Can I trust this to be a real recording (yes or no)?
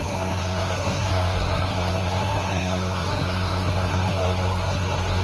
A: no